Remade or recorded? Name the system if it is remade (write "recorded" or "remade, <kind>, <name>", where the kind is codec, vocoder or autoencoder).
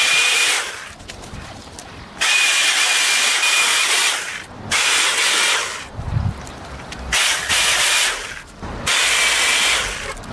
recorded